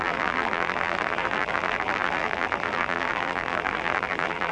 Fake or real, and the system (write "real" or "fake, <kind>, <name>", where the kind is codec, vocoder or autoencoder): fake, vocoder, BigVGAN v2